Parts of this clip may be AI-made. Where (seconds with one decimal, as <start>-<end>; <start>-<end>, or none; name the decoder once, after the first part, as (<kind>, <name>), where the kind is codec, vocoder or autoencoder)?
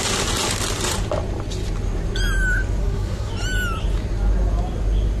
2.8-3.3 (codec, SNAC)